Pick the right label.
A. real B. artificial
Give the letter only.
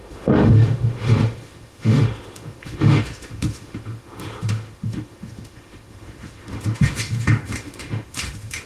B